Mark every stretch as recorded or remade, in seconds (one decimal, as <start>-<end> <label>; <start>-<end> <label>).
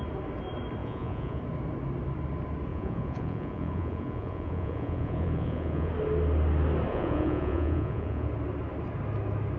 0.0-0.8 recorded; 0.8-1.4 remade; 1.4-2.7 recorded; 2.7-5.9 remade; 5.9-6.9 recorded; 6.9-8.3 remade; 8.3-9.6 recorded